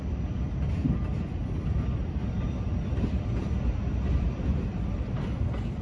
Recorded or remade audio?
remade